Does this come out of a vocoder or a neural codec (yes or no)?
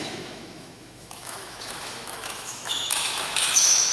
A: yes